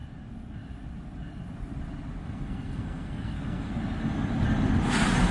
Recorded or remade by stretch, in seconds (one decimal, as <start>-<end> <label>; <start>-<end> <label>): 0.0-2.2 recorded; 2.2-3.7 remade; 3.7-5.3 recorded